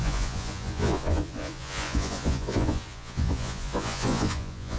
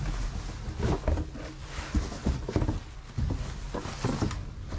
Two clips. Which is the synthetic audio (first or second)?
first